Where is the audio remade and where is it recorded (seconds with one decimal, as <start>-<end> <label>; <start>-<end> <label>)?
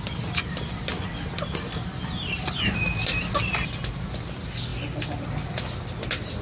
0.0-6.4 recorded